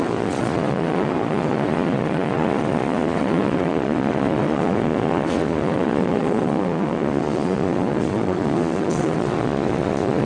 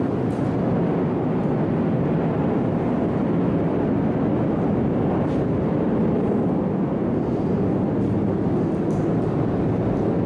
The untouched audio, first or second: second